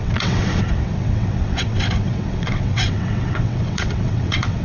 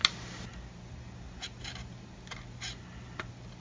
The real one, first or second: second